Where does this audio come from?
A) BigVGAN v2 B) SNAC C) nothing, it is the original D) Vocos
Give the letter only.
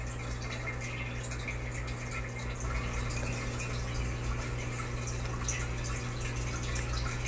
C